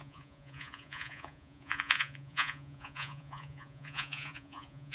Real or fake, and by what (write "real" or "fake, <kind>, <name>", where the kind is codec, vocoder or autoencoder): fake, vocoder, Vocos